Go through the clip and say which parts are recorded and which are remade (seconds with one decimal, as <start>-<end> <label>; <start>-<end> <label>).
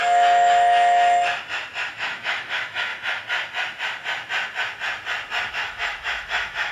0.0-1.3 remade; 1.3-1.9 recorded; 1.9-2.9 remade; 2.9-5.5 recorded; 5.5-6.7 remade